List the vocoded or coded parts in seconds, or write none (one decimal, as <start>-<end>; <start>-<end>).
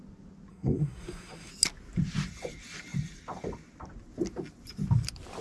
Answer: 0.5-1.5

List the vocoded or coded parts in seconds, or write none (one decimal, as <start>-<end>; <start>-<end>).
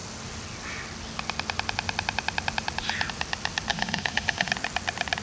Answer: 3.7-4.5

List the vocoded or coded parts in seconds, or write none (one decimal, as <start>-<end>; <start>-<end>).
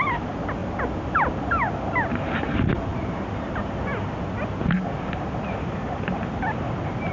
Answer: none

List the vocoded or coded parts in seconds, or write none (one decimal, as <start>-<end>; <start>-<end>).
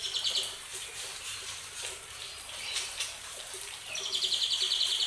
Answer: 0.7-3.8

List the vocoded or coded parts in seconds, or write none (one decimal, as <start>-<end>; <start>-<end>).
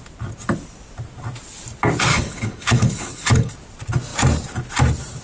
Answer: 2.1-3.5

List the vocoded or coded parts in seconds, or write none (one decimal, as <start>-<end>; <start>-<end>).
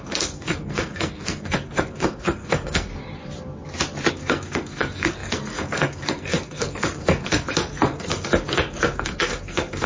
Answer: 0.0-2.9; 4.1-9.9